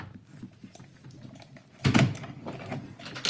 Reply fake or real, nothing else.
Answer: real